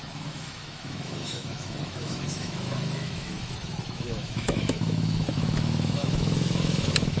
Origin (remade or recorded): remade